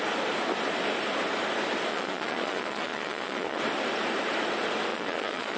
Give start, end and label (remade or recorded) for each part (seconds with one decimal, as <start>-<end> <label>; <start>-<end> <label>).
0.0-1.9 recorded; 1.9-3.6 remade; 3.6-4.9 recorded; 4.9-5.6 remade